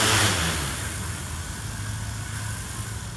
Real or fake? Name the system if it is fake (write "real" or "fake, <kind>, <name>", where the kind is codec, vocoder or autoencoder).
real